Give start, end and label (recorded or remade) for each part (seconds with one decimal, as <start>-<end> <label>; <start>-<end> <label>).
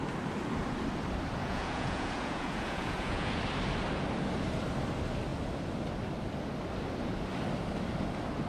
0.0-1.4 recorded; 1.4-3.4 remade; 3.4-8.5 recorded